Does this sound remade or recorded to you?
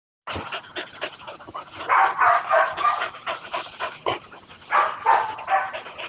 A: recorded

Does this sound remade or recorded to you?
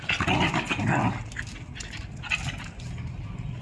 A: recorded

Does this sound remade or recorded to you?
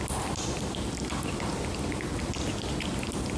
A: recorded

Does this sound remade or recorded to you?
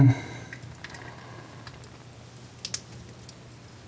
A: recorded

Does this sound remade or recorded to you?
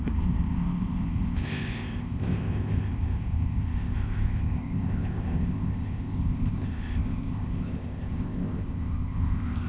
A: remade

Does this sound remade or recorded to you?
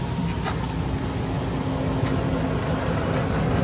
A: recorded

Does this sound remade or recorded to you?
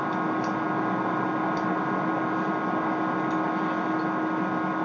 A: recorded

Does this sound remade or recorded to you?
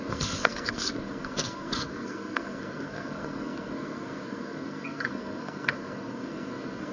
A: remade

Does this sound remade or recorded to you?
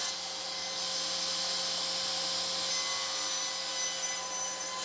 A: recorded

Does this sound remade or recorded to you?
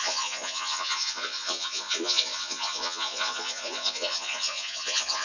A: remade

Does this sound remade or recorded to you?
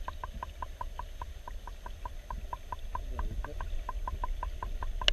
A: recorded